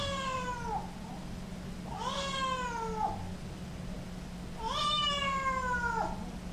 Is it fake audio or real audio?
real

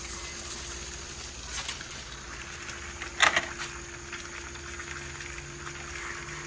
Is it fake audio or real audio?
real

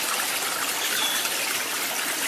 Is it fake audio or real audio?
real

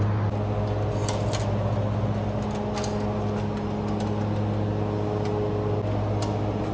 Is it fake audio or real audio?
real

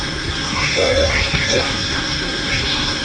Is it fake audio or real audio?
fake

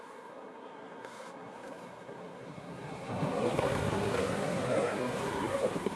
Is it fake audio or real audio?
fake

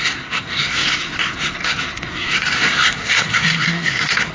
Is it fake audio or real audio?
fake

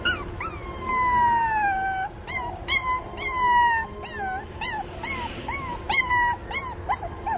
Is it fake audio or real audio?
real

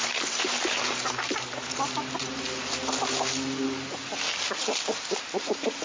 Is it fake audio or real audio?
real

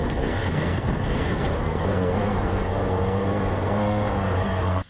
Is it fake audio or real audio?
fake